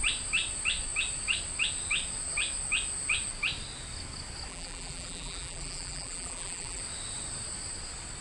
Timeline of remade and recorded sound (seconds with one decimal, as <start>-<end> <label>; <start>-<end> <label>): 0.0-4.5 recorded; 4.5-6.8 remade; 6.8-8.2 recorded